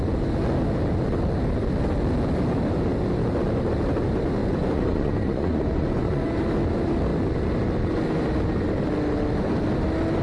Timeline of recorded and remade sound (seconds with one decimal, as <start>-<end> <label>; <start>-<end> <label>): 0.0-4.4 recorded; 4.4-6.3 remade; 6.3-10.2 recorded